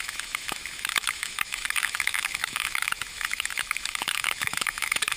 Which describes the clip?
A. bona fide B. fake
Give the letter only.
B